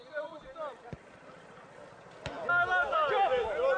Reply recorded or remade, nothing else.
recorded